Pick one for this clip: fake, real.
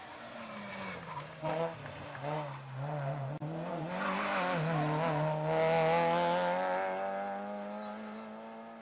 real